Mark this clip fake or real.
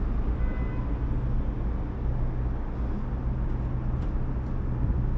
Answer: real